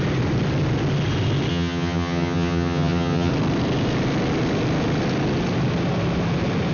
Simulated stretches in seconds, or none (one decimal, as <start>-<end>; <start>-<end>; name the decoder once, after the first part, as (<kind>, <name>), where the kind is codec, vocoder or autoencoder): 1.5-3.3 (vocoder, HiFi-GAN)